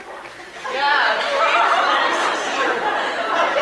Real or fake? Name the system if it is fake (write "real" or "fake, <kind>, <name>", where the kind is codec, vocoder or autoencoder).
real